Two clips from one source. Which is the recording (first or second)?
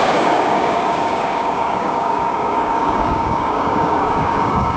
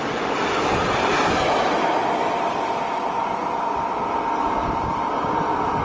second